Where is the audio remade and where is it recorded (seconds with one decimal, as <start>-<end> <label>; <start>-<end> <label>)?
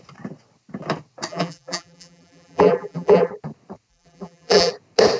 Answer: 0.0-1.3 recorded; 1.3-3.3 remade; 3.3-3.9 recorded; 3.9-4.7 remade; 4.7-5.2 recorded